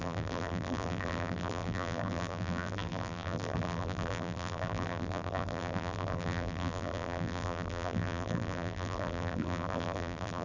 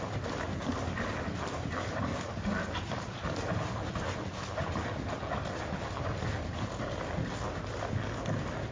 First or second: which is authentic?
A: second